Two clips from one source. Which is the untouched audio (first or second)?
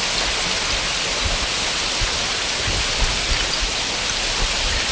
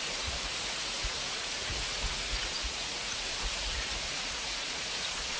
first